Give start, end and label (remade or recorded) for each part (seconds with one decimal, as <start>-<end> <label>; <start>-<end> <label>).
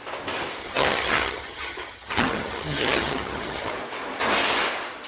0.0-0.6 recorded; 0.6-3.7 remade; 3.7-5.1 recorded